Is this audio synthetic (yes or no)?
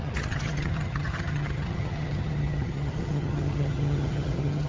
yes